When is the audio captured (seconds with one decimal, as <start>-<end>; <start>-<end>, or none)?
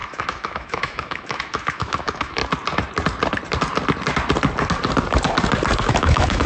2.4-5.9